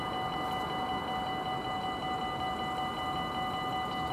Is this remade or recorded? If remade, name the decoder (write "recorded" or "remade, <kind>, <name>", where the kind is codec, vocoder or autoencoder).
recorded